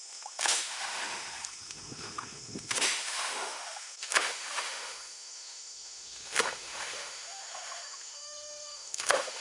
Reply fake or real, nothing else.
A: fake